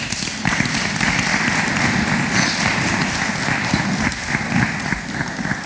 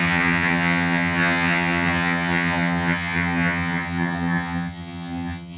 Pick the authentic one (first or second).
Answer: first